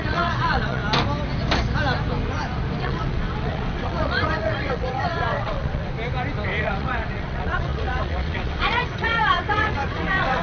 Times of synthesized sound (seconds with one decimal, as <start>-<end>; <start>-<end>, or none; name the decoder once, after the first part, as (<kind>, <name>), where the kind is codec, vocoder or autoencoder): 0.0-0.8 (vocoder, WaveNeXt); 2.8-5.9; 6.6-10.4